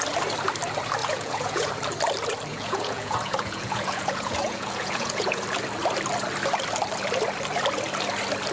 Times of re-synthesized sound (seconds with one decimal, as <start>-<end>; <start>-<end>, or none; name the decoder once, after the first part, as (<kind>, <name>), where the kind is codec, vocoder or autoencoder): 1.0-1.7 (vocoder, Vocos); 2.5-5.4